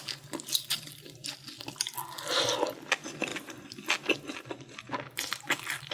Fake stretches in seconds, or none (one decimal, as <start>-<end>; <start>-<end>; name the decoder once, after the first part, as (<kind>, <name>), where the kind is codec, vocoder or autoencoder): none